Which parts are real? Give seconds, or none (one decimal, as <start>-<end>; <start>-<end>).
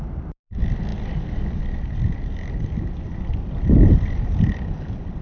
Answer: 0.0-5.2